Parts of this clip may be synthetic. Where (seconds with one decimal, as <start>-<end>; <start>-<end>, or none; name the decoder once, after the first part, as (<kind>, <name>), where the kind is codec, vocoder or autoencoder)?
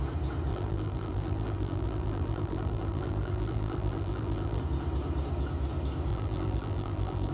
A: 0.5-4.6 (vocoder, BigVGAN v2); 6.1-7.3